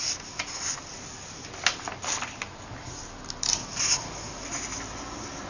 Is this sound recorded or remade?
recorded